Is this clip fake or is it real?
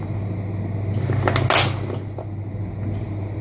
real